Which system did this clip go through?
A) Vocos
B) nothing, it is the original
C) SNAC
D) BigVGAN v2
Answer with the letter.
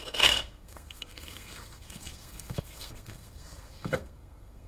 C